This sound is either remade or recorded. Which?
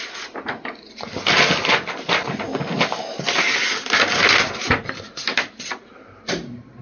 recorded